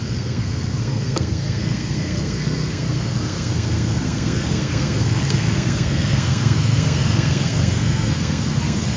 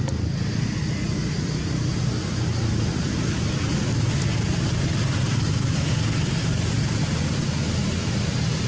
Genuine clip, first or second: second